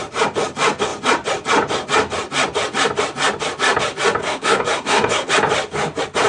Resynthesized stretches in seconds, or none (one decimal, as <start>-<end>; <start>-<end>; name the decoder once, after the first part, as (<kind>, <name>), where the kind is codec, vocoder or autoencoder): 4.2-5.3 (codec, SNAC)